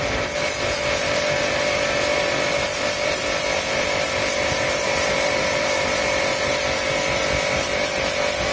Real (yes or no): no